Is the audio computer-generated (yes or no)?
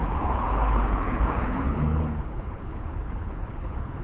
yes